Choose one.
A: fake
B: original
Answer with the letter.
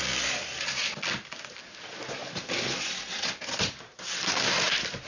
B